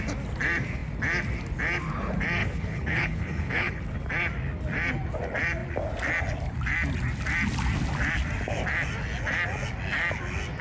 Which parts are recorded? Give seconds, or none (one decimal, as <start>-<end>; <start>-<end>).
0.0-2.4; 3.8-10.6